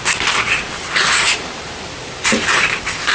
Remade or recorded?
remade